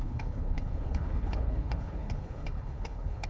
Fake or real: fake